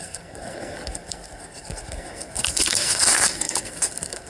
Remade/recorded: remade